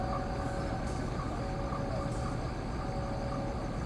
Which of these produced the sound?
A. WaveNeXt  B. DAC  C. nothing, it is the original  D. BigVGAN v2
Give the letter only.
C